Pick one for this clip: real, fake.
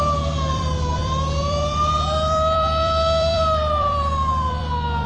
fake